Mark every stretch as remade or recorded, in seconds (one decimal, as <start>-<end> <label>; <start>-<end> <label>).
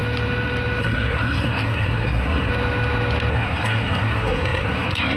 0.0-0.8 recorded; 0.8-2.5 remade; 2.5-3.3 recorded; 3.3-5.2 remade